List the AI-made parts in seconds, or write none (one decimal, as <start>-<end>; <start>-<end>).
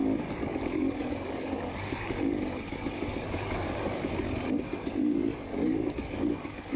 0.0-4.1; 4.7-6.8